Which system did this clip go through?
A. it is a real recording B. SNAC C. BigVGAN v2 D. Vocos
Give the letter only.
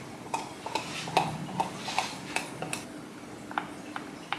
A